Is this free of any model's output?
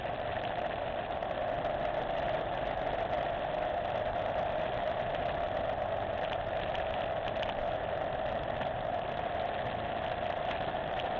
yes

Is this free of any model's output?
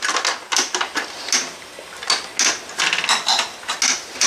yes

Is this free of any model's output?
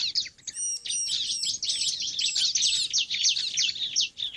yes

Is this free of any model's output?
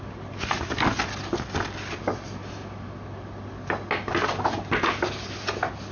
yes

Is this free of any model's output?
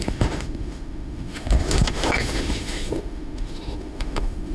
no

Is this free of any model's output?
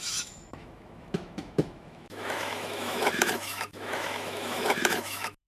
no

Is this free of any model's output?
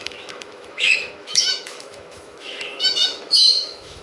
no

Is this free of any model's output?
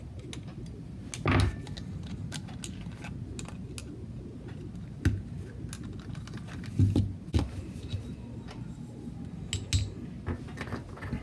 yes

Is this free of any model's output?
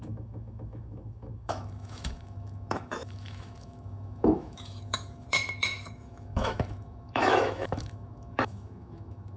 no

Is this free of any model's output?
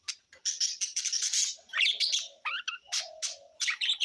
yes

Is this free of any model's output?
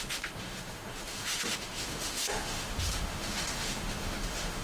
no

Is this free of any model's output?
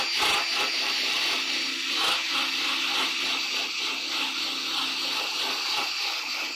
yes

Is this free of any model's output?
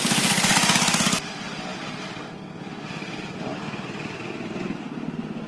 yes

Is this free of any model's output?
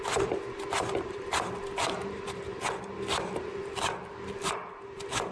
yes